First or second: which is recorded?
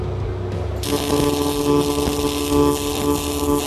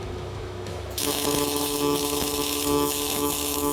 first